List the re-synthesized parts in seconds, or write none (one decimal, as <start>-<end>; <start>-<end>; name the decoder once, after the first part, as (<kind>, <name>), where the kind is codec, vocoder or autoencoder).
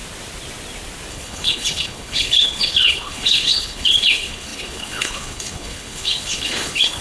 1.1-7.0 (codec, HILCodec)